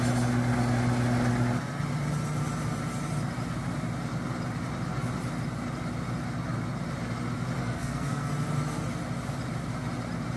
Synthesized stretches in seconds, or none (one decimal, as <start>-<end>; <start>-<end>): 7.6-8.3